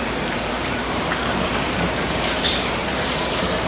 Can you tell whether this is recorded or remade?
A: remade